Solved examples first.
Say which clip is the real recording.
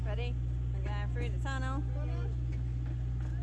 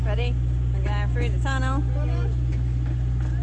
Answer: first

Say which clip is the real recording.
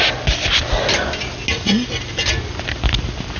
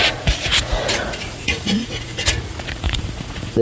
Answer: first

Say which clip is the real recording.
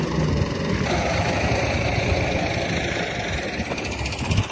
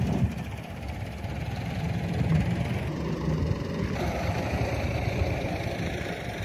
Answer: first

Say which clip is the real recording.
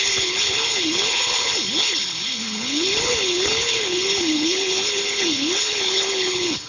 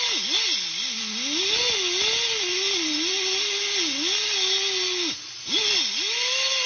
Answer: second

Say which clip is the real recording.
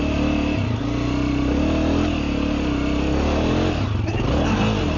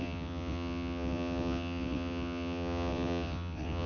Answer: first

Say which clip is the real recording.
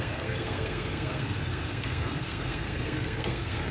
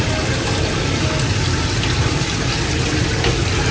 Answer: second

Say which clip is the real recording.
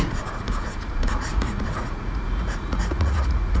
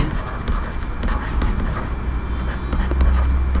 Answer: second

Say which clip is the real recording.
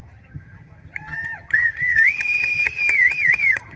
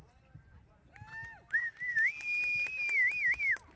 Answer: second